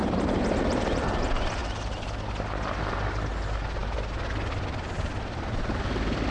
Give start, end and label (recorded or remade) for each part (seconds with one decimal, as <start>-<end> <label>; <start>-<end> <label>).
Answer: 0.0-0.8 remade; 0.8-6.3 recorded